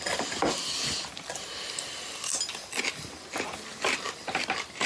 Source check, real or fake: real